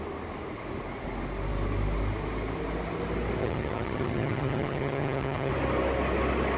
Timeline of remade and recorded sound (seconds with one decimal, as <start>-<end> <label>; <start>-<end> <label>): 0.0-3.4 recorded; 3.4-5.5 remade; 5.5-6.6 recorded

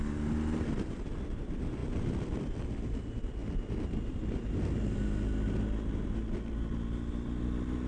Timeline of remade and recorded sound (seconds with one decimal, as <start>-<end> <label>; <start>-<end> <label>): 0.0-1.8 recorded; 1.8-2.5 remade; 2.5-3.4 recorded; 3.4-4.6 remade; 4.6-7.9 recorded

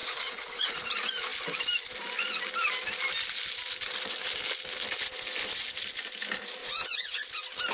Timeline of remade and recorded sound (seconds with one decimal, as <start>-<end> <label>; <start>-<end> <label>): 0.0-0.9 remade; 0.9-6.6 recorded; 6.6-7.2 remade; 7.2-7.7 recorded

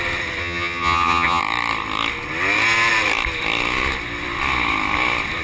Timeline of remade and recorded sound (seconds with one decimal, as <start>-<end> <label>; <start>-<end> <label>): 0.0-0.4 recorded; 0.4-1.4 remade; 1.4-5.4 recorded

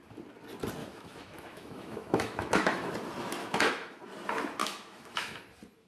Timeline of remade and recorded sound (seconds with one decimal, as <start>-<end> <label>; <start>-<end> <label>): 0.0-0.8 recorded; 0.8-2.9 remade; 2.9-3.4 recorded; 3.4-4.0 remade; 4.0-4.6 recorded; 4.6-5.4 remade; 5.4-5.9 recorded

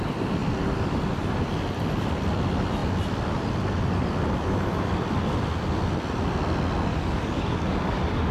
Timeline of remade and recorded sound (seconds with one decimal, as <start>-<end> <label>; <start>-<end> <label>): 0.0-6.9 recorded; 6.9-8.3 remade

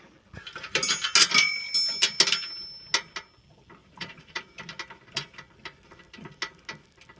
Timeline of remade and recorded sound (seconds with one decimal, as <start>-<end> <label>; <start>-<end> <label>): 0.0-3.8 recorded; 3.8-4.4 remade; 4.4-7.2 recorded